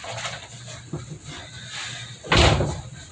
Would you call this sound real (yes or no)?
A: yes